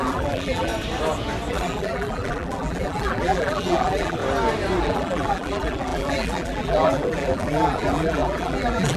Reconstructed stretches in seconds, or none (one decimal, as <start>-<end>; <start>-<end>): 0.0-0.7; 1.5-4.2; 4.8-9.0